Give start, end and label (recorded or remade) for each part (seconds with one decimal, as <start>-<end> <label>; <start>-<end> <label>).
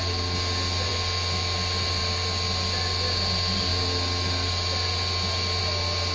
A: 0.0-6.1 recorded